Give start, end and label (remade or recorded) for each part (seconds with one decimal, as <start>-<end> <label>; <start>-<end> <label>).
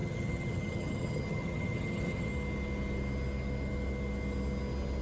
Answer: 0.0-2.3 remade; 2.3-5.0 recorded